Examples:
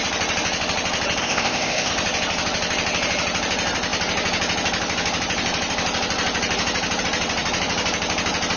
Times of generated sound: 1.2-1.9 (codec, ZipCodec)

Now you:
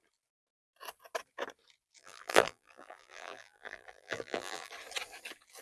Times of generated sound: 2.0-4.7 (vocoder, BigVGAN v2)

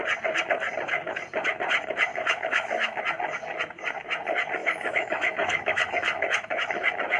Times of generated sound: 2.1-3.0 (autoencoder, DAC-VAE); 4.6-6.7

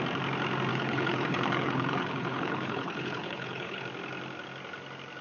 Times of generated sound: 0.7-3.8 (codec, HILCodec)

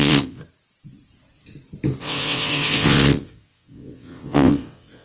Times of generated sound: 0.0-0.4 (vocoder, WaveNeXt); 2.0-5.0

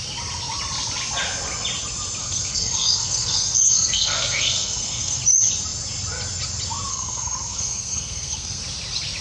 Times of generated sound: 2.2-5.2 (codec, SNAC); 6.9-8.6

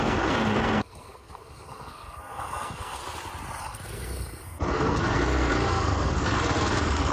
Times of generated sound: 0.0-3.0 (codec, SNAC); 3.6-7.1

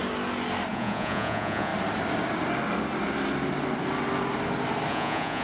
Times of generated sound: 0.7-1.7 (vocoder, Vocos); 4.9-5.4